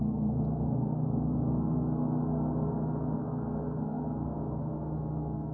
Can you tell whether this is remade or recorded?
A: remade